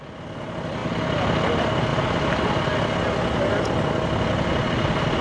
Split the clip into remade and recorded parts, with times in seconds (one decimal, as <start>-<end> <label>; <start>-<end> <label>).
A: 0.0-5.2 recorded